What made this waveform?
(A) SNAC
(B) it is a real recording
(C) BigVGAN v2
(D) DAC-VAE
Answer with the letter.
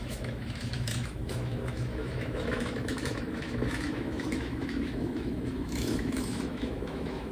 D